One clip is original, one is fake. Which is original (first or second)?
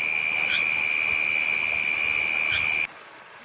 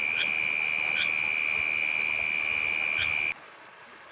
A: second